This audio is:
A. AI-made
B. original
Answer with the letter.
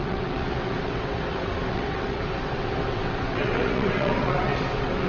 A